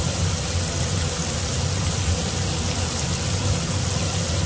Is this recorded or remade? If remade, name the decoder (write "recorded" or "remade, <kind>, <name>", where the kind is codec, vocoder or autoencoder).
recorded